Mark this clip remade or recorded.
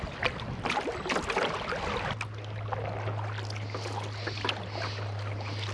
recorded